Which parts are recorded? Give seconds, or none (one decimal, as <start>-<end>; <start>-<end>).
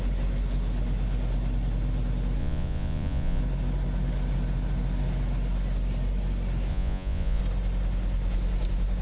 0.0-2.4; 3.4-6.7; 7.4-9.0